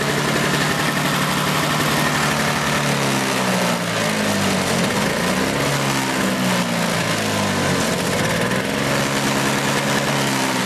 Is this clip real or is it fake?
real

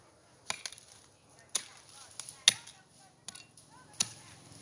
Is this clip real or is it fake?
real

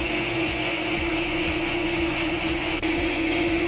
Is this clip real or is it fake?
fake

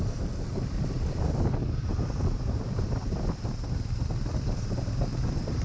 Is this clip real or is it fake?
real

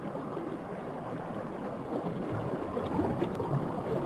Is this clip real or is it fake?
real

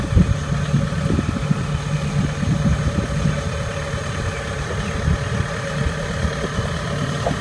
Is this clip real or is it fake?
real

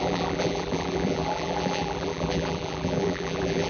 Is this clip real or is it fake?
fake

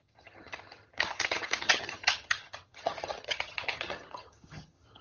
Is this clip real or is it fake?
fake